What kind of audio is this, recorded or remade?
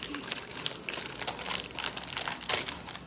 recorded